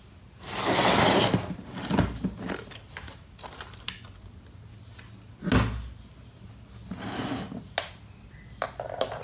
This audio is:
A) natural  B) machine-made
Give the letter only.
A